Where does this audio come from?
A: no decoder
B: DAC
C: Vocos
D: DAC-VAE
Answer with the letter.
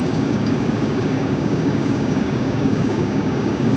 B